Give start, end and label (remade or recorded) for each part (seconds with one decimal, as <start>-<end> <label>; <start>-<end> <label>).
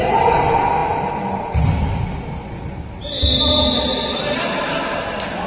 0.0-5.5 recorded